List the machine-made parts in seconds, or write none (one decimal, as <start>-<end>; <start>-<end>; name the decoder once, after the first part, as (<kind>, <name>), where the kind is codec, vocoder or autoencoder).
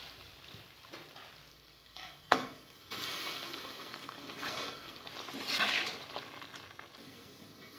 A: 1.5-5.1 (codec, SNAC); 7.0-7.8